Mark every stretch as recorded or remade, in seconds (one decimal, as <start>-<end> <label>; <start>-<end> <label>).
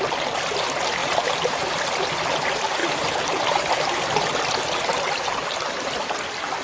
0.0-1.0 recorded; 1.0-1.7 remade; 1.7-2.8 recorded; 2.8-4.2 remade; 4.2-6.6 recorded